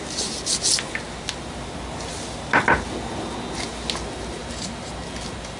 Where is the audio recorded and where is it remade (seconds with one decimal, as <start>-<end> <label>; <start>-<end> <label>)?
0.0-4.4 recorded; 4.4-4.9 remade; 4.9-5.6 recorded